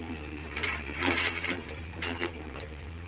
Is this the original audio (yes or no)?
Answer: no